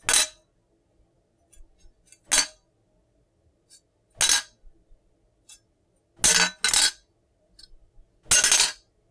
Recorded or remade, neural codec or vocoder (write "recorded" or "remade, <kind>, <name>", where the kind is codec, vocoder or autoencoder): recorded